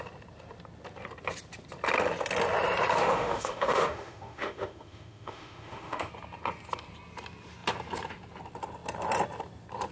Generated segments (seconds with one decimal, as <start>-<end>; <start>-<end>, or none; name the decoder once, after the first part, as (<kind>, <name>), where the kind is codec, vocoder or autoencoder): 3.0-6.1 (autoencoder, DAC-VAE)